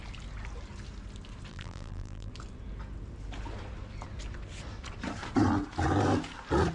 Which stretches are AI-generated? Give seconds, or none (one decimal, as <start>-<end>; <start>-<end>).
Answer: 1.5-2.3